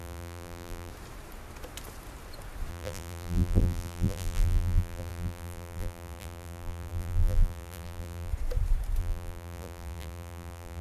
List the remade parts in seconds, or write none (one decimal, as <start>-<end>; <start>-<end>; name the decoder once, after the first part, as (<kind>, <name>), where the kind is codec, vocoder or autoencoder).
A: 0.0-0.9 (vocoder, BigVGAN v2); 2.7-8.3; 9.0-10.8